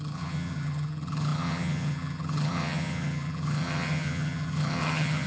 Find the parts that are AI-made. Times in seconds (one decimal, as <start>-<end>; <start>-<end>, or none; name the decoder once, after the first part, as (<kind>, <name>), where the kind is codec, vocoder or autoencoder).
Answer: 0.0-5.3 (vocoder, HiFi-GAN)